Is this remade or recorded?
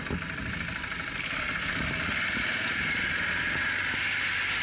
recorded